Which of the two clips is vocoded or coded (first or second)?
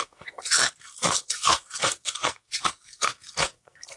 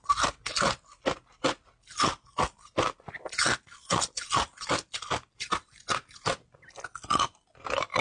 first